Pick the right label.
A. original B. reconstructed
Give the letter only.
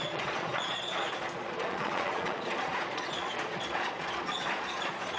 B